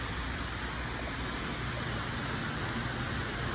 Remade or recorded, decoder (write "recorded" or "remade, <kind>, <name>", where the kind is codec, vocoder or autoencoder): recorded